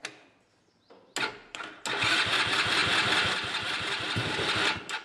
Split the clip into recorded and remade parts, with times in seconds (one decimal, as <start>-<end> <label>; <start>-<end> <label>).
0.0-2.8 recorded; 2.8-4.3 remade; 4.3-5.0 recorded